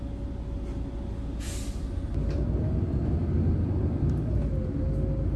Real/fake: real